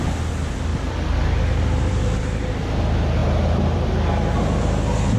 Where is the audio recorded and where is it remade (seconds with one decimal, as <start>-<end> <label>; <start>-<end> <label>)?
0.0-0.7 recorded; 0.7-2.0 remade; 2.0-3.2 recorded; 3.2-3.9 remade; 3.9-5.2 recorded